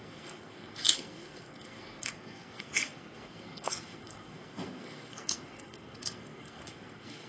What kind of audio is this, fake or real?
fake